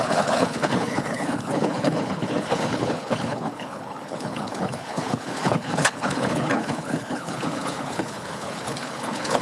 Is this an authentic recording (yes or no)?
no